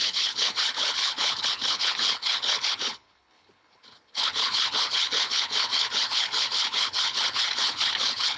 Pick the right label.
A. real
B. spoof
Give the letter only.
B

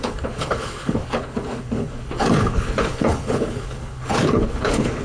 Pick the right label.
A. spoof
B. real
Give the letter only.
A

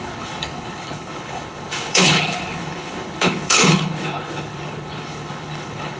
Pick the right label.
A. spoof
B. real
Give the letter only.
A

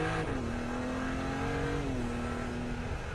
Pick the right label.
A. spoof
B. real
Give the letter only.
B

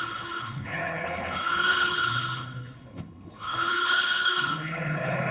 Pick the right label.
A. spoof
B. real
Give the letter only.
A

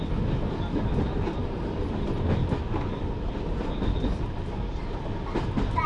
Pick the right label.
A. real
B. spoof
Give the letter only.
A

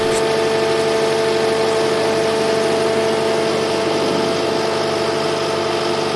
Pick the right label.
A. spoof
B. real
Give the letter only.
B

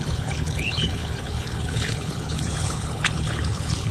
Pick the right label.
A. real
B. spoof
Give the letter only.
B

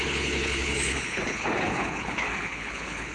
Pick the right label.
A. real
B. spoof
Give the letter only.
B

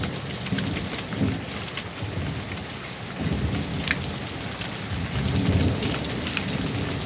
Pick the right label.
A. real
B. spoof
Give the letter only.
A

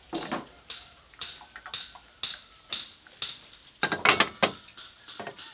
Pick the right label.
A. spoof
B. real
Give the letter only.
B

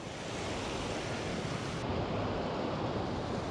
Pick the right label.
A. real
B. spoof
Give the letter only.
A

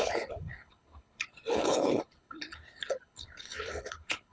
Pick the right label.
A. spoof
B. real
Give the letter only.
A